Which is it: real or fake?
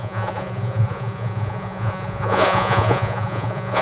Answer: fake